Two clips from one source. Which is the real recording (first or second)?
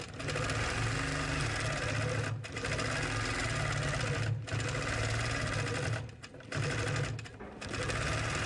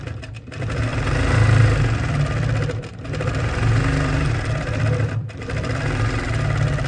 first